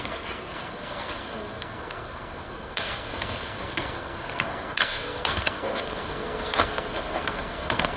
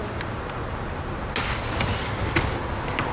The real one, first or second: second